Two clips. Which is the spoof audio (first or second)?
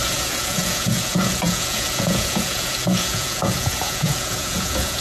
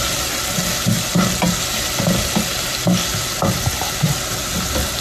first